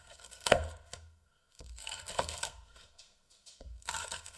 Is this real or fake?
fake